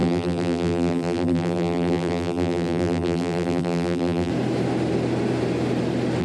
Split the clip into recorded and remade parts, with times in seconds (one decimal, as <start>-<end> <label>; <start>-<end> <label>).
0.0-4.3 remade; 4.3-6.2 recorded